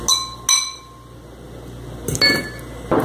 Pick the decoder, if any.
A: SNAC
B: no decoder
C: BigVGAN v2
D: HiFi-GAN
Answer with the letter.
B